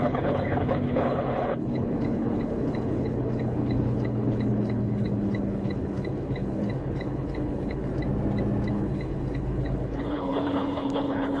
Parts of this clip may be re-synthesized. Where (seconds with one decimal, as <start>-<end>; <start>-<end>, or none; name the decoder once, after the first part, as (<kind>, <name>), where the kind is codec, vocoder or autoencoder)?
0.0-7.9 (codec, HILCodec); 8.7-11.4